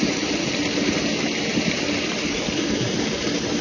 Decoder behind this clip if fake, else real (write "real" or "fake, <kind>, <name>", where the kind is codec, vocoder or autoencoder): real